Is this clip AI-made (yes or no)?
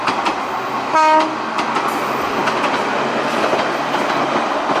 no